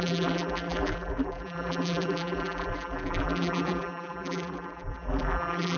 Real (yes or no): no